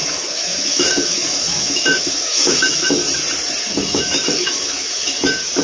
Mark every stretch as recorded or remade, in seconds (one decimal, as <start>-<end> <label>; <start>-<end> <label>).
0.0-3.0 remade; 3.0-3.6 recorded; 3.6-5.6 remade